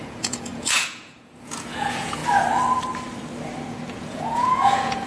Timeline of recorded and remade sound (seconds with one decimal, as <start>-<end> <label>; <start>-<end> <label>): 0.0-2.2 remade; 2.2-3.9 recorded; 3.9-5.1 remade